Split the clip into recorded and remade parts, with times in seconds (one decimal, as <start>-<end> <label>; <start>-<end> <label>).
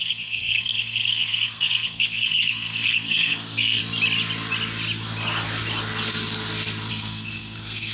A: 0.0-3.8 remade; 3.8-6.9 recorded; 6.9-7.9 remade